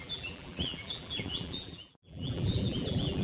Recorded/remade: remade